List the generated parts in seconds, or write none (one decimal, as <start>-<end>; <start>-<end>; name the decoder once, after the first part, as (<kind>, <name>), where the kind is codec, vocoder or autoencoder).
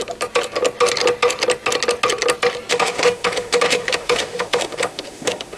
2.7-5.6 (autoencoder, DAC-VAE)